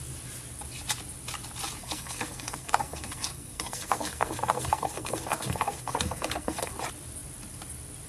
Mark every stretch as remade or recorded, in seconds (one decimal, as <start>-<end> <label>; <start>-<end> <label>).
0.0-1.8 recorded; 1.8-6.7 remade; 6.7-8.1 recorded